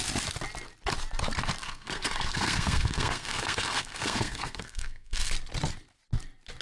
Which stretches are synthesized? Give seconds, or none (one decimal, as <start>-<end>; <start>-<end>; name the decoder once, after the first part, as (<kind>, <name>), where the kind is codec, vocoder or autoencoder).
1.6-5.3 (codec, SNAC)